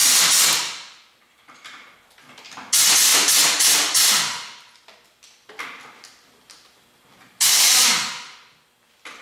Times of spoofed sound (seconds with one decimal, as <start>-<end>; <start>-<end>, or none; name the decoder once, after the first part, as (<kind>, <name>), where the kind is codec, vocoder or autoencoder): none